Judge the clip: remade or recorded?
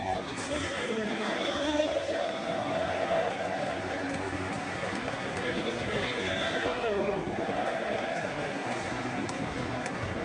remade